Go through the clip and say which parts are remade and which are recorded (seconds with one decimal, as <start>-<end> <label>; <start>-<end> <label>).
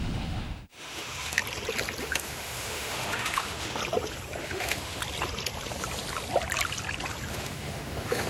0.0-1.4 remade; 1.4-2.0 recorded; 2.0-3.8 remade; 3.8-4.4 recorded; 4.4-5.0 remade; 5.0-7.3 recorded; 7.3-8.3 remade